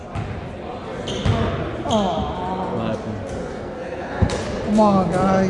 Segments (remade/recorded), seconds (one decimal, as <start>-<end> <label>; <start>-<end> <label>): 0.0-3.4 recorded; 3.4-4.4 remade; 4.4-5.5 recorded